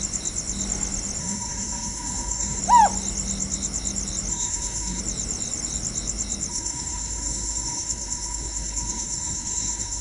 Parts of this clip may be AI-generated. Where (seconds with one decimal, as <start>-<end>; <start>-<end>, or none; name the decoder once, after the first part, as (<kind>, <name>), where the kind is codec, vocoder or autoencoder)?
1.2-2.6 (codec, SNAC); 4.3-5.0; 6.5-10.0